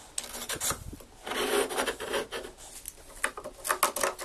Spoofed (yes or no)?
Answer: no